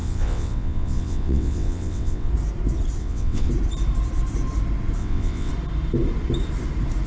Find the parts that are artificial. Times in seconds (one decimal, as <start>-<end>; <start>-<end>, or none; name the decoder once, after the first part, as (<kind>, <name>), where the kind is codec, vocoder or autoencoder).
0.0-2.3 (vocoder, WaveNeXt); 3.0-3.5; 5.0-5.5